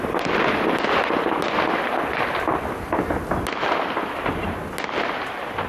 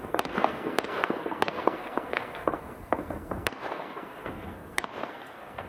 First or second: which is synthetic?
second